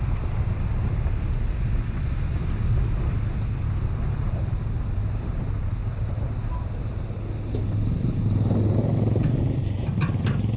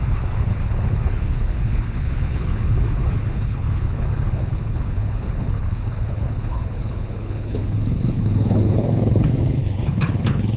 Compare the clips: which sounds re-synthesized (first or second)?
second